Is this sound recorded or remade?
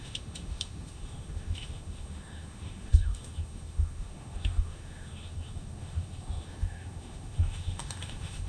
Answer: remade